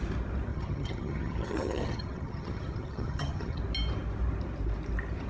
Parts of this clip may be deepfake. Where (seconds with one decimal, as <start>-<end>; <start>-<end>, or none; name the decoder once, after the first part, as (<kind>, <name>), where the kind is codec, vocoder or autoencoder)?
0.5-3.6 (vocoder, HiFi-GAN)

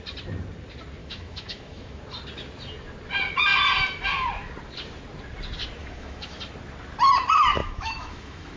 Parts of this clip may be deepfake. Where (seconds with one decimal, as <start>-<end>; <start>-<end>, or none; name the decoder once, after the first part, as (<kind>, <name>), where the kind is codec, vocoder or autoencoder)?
1.0-2.0 (autoencoder, DAC-VAE); 5.8-6.4; 7.6-8.6

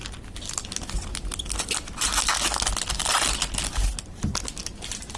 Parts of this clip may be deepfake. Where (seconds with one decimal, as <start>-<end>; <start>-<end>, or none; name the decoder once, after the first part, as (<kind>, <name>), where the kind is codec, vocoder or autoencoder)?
none

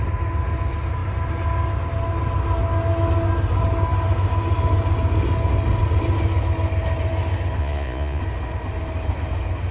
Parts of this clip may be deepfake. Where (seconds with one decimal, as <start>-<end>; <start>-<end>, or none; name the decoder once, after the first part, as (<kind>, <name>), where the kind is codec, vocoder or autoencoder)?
7.6-8.2 (vocoder, Vocos)

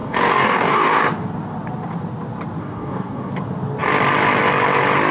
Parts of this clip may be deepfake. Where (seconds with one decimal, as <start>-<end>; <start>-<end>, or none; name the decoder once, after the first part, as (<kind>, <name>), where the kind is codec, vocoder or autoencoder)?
0.0-1.0 (codec, DAC); 2.6-3.3

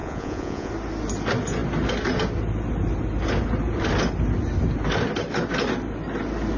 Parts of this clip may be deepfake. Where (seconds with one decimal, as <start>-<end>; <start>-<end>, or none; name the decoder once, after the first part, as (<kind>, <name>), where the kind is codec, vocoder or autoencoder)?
0.0-0.7 (vocoder, Vocos)

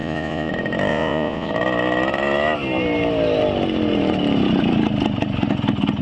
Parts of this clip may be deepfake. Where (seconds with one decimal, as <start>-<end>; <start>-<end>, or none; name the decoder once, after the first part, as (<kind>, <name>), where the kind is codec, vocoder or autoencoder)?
0.0-0.5 (vocoder, Vocos); 0.9-1.5